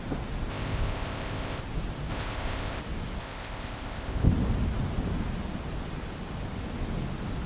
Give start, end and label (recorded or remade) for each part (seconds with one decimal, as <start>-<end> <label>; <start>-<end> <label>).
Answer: 0.0-0.5 recorded; 0.5-1.6 remade; 1.6-2.1 recorded; 2.1-2.8 remade; 2.8-3.2 recorded; 3.2-4.3 remade; 4.3-7.5 recorded